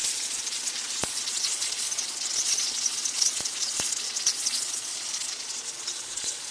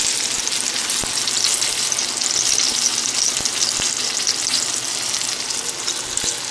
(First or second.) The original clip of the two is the second